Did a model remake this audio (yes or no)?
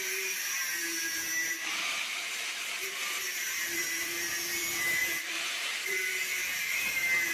yes